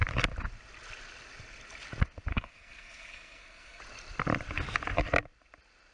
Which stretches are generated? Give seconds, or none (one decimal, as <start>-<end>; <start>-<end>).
2.3-3.8